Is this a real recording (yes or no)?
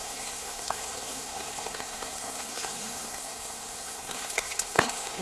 no